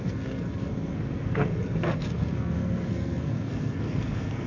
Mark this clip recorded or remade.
remade